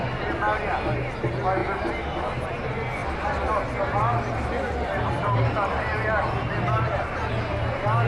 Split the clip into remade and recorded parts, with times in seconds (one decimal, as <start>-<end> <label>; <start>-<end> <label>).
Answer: 0.0-8.1 recorded